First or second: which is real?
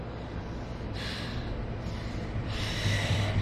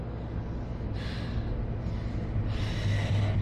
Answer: second